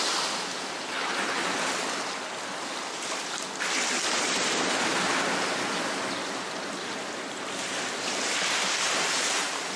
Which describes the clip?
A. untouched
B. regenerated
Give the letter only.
A